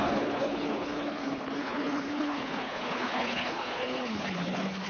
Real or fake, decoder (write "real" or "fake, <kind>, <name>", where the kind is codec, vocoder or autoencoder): fake, codec, HILCodec